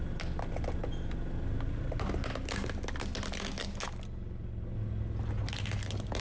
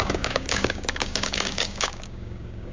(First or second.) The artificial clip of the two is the second